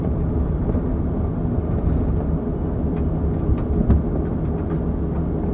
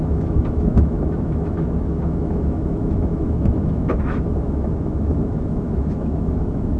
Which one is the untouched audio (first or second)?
first